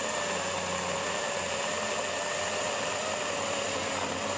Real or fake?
real